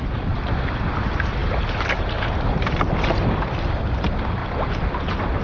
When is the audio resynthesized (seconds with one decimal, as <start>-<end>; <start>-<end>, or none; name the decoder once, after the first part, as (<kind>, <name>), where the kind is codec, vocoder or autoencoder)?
1.4-3.3 (vocoder, BigVGAN v2); 4.4-4.9